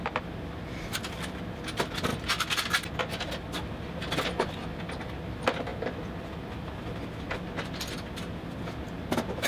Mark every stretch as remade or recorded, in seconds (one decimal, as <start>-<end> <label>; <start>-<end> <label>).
0.0-9.5 recorded